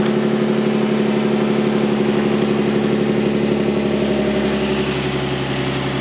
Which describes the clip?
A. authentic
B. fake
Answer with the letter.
A